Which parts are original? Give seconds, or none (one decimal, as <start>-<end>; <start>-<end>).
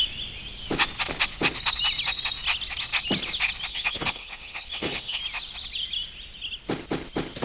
0.0-3.7; 5.2-7.4